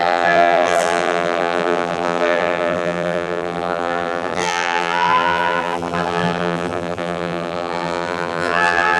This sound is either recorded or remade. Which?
remade